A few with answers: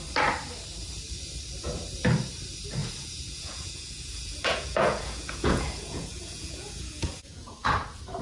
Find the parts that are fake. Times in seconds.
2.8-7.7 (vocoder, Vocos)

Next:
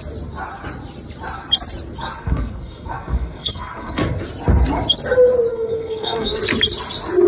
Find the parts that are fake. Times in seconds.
2.2-4.0 (codec, SNAC); 5.5-6.4

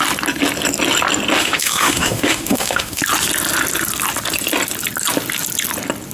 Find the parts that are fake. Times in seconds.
1.4-3.0 (autoencoder, DAC-VAE)

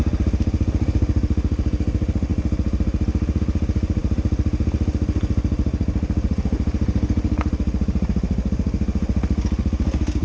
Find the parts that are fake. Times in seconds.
none

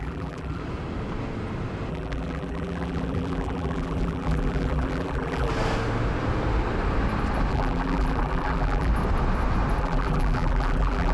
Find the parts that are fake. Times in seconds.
0.0-0.6 (vocoder, BigVGAN v2); 1.9-5.5; 7.5-8.9; 9.8-11.1

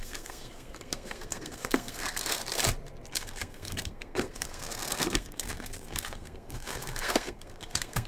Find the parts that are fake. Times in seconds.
0.0-2.4 (codec, SNAC); 3.1-8.1

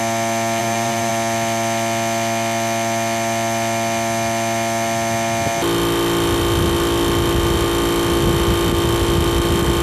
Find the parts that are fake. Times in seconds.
0.6-1.1 (vocoder, BigVGAN v2)